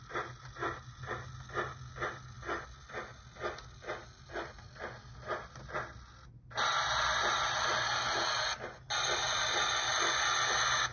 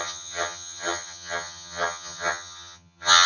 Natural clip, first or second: first